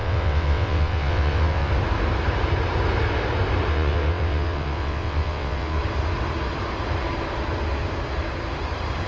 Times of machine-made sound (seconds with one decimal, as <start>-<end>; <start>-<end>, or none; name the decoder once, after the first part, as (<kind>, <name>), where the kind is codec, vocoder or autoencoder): 0.0-1.7 (vocoder, WaveNeXt); 3.7-5.8